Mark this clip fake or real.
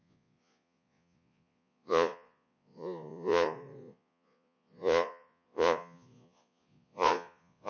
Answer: fake